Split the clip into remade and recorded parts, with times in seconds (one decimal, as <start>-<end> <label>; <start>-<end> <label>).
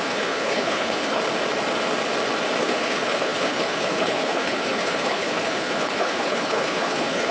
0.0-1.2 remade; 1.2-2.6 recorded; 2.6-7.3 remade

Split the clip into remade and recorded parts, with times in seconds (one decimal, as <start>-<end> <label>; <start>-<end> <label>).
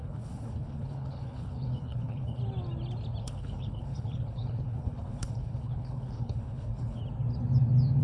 0.0-2.4 remade; 2.4-3.2 recorded; 3.2-7.0 remade; 7.0-8.0 recorded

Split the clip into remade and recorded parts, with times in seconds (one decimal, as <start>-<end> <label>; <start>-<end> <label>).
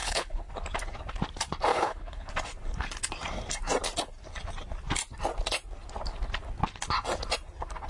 0.0-0.5 remade; 0.5-1.7 recorded; 1.7-2.3 remade; 2.3-7.9 recorded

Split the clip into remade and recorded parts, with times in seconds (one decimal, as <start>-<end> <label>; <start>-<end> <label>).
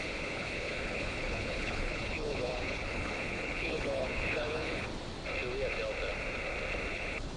0.0-4.9 remade; 4.9-6.9 recorded; 6.9-7.4 remade